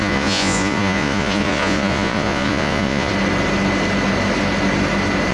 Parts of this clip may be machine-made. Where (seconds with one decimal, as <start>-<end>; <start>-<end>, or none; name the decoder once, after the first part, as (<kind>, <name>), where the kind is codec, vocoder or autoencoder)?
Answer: 0.0-3.1 (vocoder, Vocos)